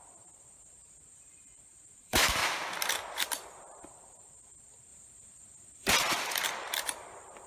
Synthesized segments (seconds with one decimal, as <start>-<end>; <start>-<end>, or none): 0.0-2.4; 3.2-7.5